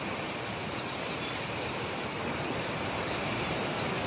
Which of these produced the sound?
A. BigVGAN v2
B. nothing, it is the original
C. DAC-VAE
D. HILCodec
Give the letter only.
A